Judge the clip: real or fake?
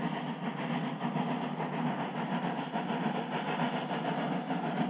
real